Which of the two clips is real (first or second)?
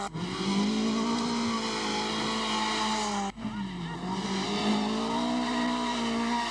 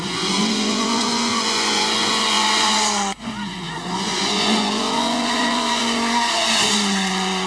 first